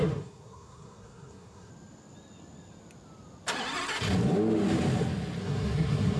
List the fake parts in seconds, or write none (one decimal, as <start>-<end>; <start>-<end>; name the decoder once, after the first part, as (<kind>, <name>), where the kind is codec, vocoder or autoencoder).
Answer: 0.0-1.7 (codec, SNAC); 5.4-6.2